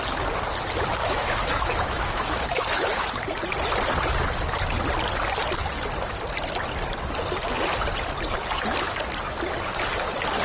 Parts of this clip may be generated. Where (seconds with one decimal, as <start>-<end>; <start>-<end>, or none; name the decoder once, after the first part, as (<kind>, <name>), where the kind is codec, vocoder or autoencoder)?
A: 1.0-3.1 (autoencoder, DAC-VAE)